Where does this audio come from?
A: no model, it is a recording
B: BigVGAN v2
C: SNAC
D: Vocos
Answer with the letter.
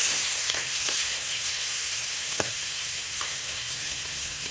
C